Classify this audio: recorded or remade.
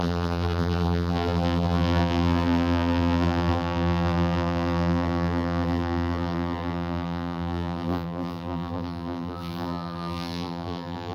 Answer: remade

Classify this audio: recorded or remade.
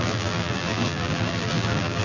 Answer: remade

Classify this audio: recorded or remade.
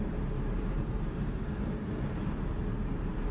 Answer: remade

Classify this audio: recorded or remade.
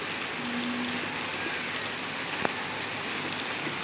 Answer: recorded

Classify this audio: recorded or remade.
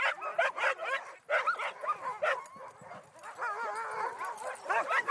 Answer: recorded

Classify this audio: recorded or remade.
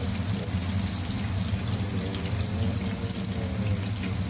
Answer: recorded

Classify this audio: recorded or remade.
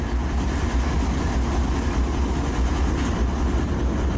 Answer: recorded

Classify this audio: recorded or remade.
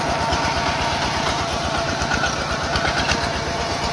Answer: remade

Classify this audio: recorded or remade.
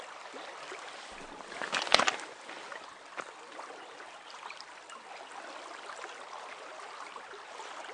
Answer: recorded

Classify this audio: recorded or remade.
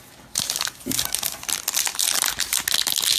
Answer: recorded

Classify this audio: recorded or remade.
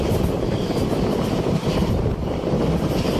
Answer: remade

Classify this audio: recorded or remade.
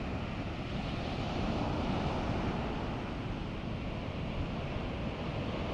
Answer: recorded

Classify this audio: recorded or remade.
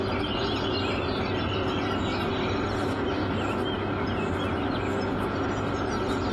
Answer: remade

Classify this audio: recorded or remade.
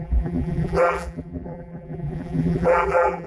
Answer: remade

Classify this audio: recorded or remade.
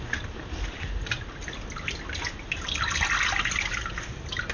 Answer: recorded